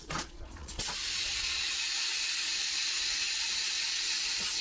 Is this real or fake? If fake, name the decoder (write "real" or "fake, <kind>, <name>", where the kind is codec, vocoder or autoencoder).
fake, vocoder, Vocos